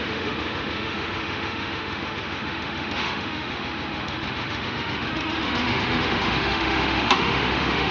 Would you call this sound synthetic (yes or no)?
yes